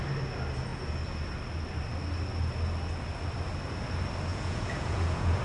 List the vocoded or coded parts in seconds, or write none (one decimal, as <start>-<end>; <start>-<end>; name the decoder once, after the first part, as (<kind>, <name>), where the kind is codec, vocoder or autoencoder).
4.3-5.4 (vocoder, Vocos)